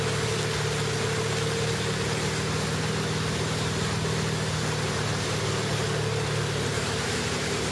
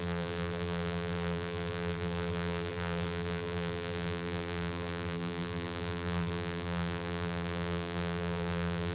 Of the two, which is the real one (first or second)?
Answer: first